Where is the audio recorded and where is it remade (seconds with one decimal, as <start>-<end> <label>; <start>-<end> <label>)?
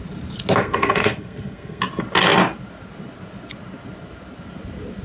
0.0-0.6 recorded; 0.6-1.8 remade; 1.8-5.0 recorded